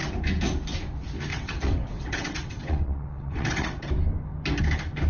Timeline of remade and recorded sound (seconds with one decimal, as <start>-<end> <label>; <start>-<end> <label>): 0.0-1.3 recorded; 1.3-3.9 remade; 3.9-5.1 recorded